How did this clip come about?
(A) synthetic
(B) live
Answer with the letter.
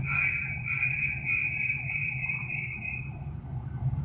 A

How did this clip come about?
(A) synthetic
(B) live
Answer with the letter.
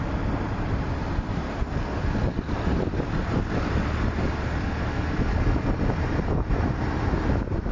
B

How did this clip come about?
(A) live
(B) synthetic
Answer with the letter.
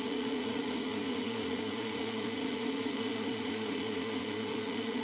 B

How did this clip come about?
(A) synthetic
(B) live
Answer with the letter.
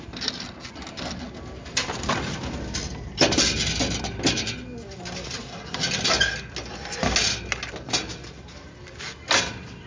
B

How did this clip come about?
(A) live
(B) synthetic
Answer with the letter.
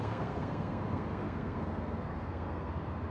B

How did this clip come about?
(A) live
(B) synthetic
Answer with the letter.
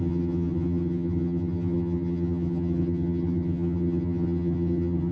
B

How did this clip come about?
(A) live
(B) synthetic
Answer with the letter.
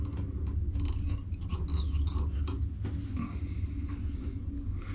A